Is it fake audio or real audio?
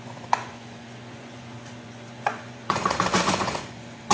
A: fake